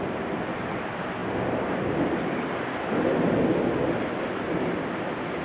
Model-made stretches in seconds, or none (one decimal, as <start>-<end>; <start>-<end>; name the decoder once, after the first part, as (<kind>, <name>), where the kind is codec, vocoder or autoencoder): none